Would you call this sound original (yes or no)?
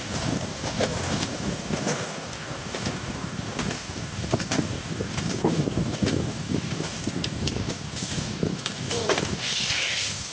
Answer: no